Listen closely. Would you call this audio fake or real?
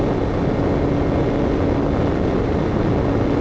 real